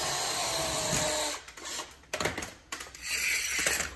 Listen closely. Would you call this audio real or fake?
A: real